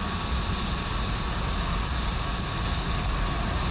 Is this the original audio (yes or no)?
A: yes